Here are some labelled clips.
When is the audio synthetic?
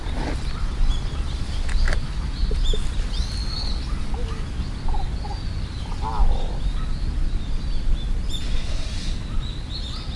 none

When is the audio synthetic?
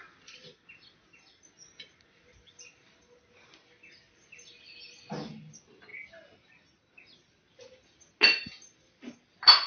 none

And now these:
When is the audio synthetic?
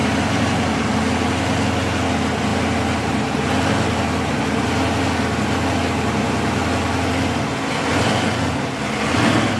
0.0-1.0 (vocoder, BigVGAN v2); 2.5-3.4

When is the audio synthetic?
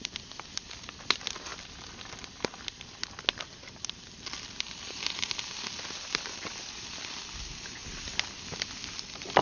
none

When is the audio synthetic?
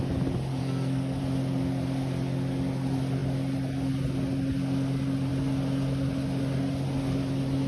0.6-1.2 (codec, SNAC)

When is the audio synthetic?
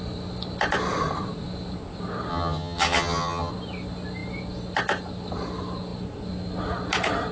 2.3-3.5 (vocoder, HiFi-GAN)